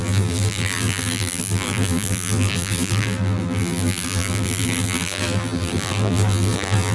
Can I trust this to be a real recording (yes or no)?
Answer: no